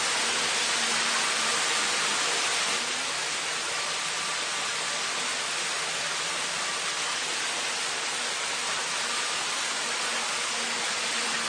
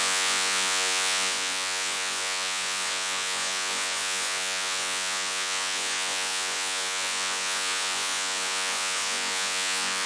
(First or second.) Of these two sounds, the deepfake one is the second